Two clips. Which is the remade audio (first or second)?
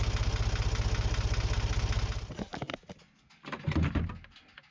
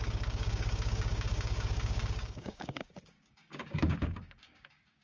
second